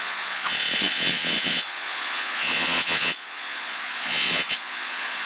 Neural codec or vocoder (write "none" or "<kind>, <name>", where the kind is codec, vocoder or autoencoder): vocoder, Vocos